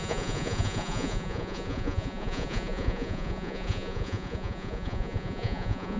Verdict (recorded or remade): remade